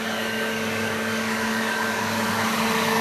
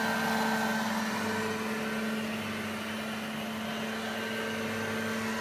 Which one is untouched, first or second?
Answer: second